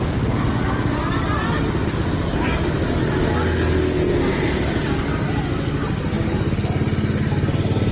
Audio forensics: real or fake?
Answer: real